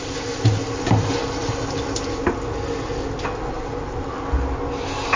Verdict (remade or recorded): recorded